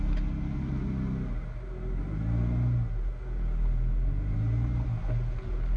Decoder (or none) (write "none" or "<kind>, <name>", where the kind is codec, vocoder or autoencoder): none